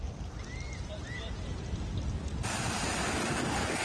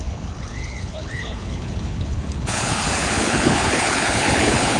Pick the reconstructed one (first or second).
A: second